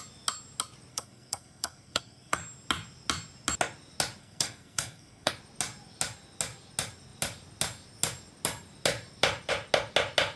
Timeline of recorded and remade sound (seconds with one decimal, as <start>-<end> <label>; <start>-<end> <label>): 0.0-0.9 recorded; 0.9-2.4 remade; 2.4-4.2 recorded; 4.2-5.3 remade; 5.3-10.4 recorded